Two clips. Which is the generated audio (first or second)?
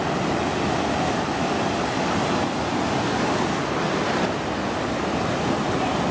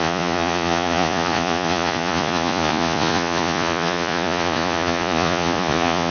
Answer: second